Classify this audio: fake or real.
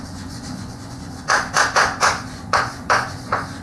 fake